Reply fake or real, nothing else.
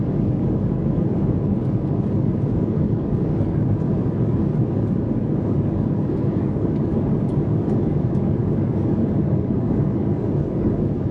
fake